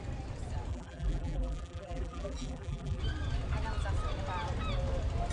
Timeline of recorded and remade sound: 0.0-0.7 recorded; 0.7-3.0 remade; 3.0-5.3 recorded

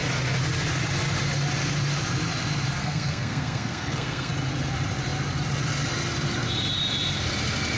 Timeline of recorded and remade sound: 0.0-2.8 recorded; 2.8-4.3 remade; 4.3-7.8 recorded

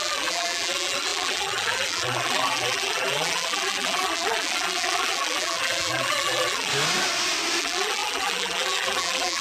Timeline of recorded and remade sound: 0.0-6.7 remade; 6.7-7.6 recorded; 7.6-9.4 remade

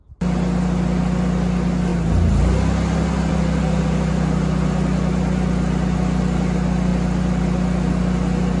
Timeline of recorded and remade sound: 0.0-8.6 recorded